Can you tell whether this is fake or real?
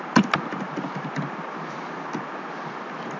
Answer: real